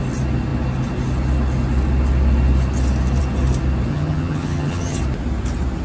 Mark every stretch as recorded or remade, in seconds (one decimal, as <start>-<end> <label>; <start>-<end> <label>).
0.0-3.9 recorded; 3.9-5.0 remade; 5.0-5.8 recorded

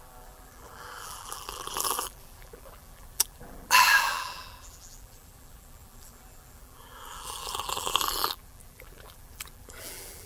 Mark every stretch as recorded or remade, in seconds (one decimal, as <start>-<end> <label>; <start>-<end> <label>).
0.0-10.3 remade

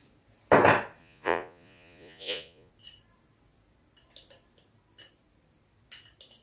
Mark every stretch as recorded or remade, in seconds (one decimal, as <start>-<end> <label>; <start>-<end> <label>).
0.0-1.0 recorded; 1.0-2.7 remade; 2.7-6.4 recorded